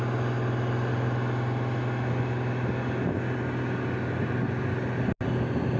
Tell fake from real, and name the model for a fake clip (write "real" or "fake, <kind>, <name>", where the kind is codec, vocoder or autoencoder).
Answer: real